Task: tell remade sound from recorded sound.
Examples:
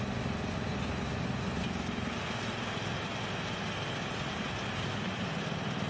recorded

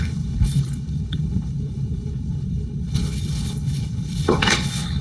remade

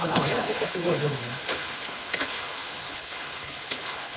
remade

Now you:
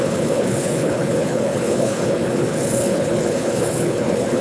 remade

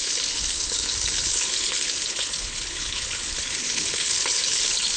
remade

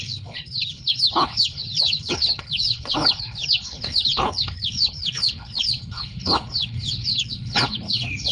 remade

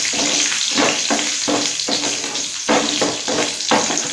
recorded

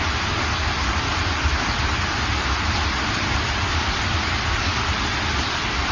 recorded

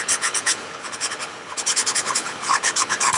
remade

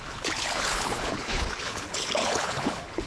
remade